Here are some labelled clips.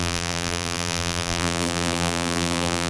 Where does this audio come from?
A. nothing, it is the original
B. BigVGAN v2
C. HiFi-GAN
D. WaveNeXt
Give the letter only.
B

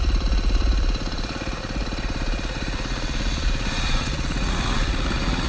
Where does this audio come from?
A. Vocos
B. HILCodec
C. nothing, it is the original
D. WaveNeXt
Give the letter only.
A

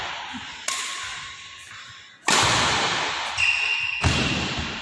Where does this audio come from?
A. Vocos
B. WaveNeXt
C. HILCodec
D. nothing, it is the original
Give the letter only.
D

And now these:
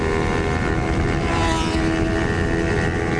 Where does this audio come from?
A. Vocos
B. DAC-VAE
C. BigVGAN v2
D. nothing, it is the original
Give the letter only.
D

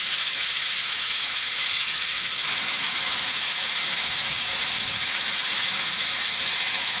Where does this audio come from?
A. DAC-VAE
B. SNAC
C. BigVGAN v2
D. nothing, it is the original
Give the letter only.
A